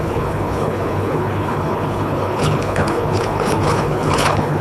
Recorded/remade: remade